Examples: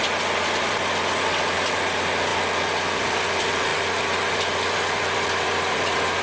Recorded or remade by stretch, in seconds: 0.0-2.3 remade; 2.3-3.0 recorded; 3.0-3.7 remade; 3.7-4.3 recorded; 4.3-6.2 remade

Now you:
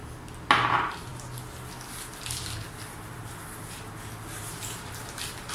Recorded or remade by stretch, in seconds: 0.0-0.7 recorded; 0.7-1.1 remade; 1.1-4.4 recorded; 4.4-5.5 remade

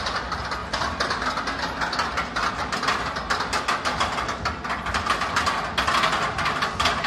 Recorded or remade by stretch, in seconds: 0.0-7.1 recorded

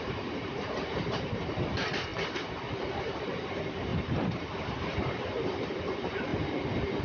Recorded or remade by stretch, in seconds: 0.0-2.1 remade; 2.1-2.9 recorded; 2.9-6.3 remade; 6.3-7.0 recorded